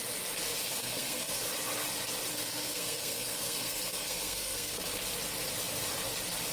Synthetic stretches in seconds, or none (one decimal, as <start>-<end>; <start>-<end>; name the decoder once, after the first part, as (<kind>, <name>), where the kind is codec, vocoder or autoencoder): 0.8-1.4 (codec, SNAC); 2.3-4.9